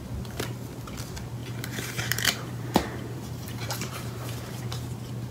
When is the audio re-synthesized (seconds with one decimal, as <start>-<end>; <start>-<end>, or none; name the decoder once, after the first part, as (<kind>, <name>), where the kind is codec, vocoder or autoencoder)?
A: 1.4-4.6 (vocoder, BigVGAN v2)